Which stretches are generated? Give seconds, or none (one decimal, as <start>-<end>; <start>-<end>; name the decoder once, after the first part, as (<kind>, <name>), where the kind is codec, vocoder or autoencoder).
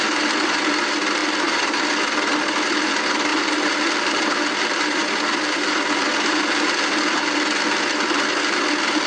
none